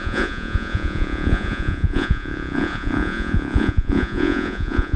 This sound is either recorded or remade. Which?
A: remade